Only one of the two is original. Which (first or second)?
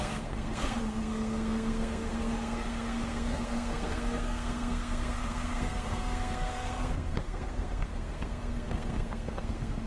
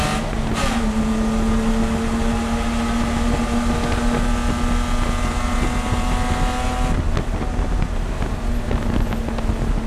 second